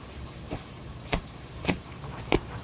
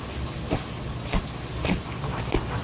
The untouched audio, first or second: second